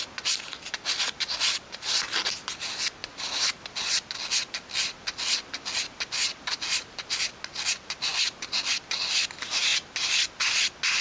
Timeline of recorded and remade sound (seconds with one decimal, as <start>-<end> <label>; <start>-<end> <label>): 0.0-11.0 recorded